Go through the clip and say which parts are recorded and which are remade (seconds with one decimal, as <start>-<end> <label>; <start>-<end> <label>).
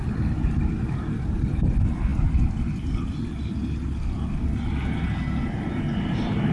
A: 0.0-6.5 recorded